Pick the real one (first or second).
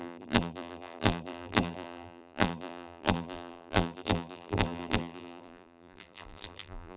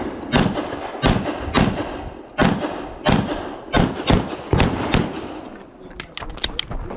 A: second